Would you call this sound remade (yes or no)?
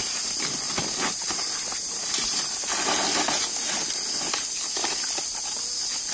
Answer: no